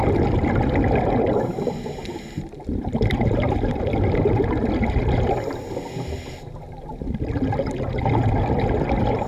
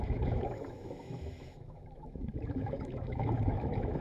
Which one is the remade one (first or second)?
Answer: second